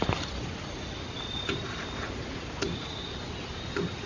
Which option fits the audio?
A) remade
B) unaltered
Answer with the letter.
B